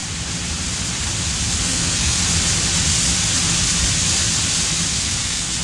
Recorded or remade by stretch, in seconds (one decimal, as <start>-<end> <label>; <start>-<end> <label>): 0.0-1.6 recorded; 1.6-2.2 remade; 2.2-4.9 recorded; 4.9-5.6 remade